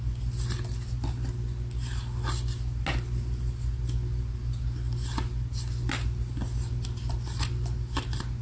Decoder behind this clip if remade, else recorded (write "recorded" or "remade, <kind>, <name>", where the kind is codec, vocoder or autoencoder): recorded